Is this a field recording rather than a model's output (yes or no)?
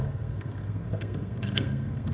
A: no